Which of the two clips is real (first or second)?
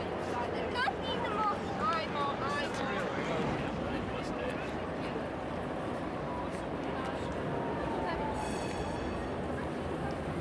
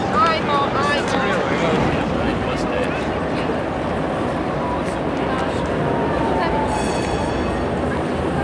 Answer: second